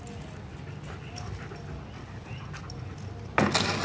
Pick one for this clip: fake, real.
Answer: real